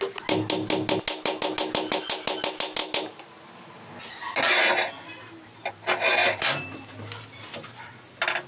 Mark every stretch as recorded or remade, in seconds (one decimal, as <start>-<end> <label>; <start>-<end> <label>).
0.0-6.2 recorded; 6.2-6.8 remade; 6.8-8.5 recorded